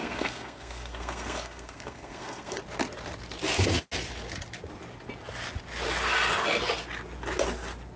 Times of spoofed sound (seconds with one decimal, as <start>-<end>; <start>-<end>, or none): 0.0-2.6